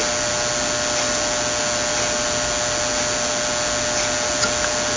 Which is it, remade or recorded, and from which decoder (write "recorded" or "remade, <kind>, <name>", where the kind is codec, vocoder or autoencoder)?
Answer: recorded